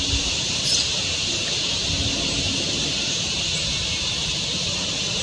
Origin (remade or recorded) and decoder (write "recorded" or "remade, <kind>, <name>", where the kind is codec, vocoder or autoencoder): remade, vocoder, BigVGAN v2